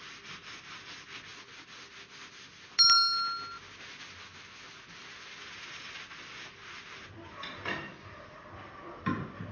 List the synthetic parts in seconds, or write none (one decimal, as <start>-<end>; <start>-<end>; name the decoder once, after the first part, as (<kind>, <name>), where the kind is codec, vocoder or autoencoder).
0.0-1.3 (vocoder, BigVGAN v2); 5.4-9.5